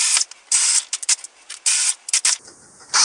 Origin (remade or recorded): recorded